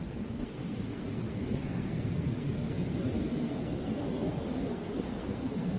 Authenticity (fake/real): fake